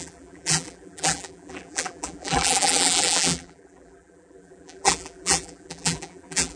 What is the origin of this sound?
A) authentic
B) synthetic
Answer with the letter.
B